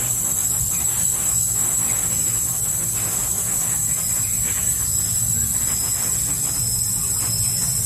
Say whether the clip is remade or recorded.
recorded